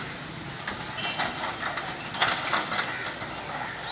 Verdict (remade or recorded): recorded